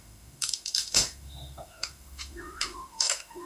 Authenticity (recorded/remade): remade